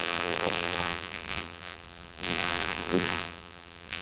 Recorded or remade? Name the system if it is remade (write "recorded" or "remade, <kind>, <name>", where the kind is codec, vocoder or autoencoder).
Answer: remade, vocoder, BigVGAN v2